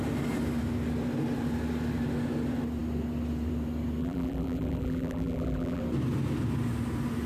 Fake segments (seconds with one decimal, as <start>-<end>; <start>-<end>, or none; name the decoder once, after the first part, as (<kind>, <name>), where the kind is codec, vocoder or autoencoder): 4.0-5.8 (vocoder, BigVGAN v2)